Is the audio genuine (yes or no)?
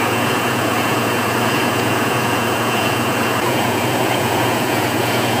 no